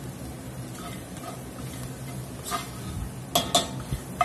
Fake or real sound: real